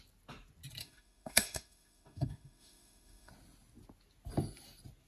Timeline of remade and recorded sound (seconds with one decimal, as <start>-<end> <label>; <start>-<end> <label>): 0.0-0.8 recorded; 0.8-3.3 remade; 3.3-5.1 recorded